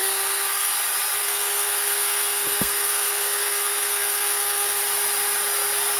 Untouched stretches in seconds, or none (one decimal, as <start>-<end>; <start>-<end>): 0.7-1.2; 4.8-6.0